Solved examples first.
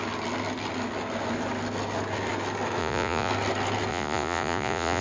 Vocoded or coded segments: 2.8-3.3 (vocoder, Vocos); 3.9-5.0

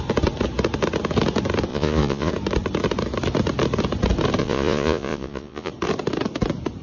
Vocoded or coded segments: 1.7-2.3 (vocoder, Vocos); 4.4-5.7

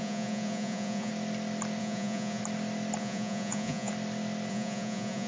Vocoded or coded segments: 0.0-1.1 (vocoder, Vocos); 1.8-2.4; 3.0-3.9; 4.5-5.3

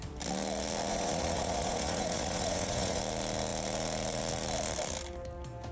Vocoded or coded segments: 0.9-3.0 (vocoder, Vocos)

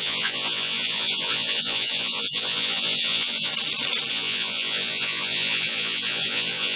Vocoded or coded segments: 0.0-3.5 (vocoder, Vocos); 4.1-6.8

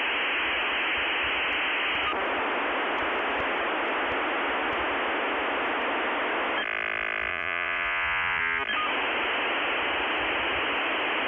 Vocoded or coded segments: 7.3-8.4 (vocoder, Vocos)